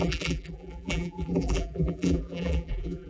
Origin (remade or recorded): remade